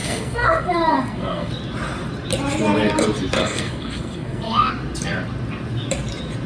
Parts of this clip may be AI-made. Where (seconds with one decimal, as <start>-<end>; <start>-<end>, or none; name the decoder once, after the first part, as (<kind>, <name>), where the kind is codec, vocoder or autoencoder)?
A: 0.0-1.5 (codec, SNAC); 3.4-4.7